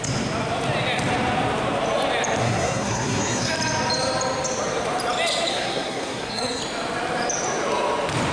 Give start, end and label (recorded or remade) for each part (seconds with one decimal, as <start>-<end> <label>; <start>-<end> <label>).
0.0-2.4 recorded; 2.4-3.5 remade; 3.5-5.5 recorded; 5.5-6.6 remade; 6.6-8.3 recorded